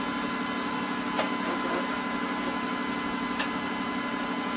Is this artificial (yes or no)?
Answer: no